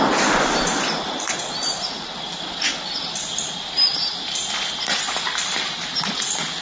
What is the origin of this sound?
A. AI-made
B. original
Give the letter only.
B